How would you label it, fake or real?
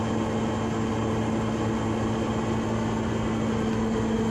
real